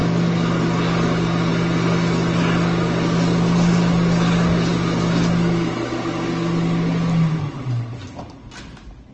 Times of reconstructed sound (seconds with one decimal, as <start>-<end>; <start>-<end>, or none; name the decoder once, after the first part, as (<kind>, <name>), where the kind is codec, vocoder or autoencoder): none